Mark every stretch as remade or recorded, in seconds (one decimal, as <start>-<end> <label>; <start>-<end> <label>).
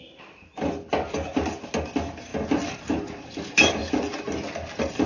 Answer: 0.0-5.1 recorded